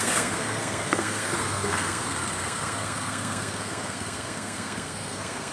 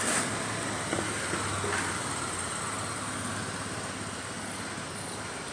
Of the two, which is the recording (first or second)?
second